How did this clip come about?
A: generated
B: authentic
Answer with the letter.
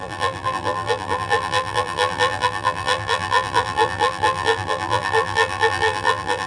A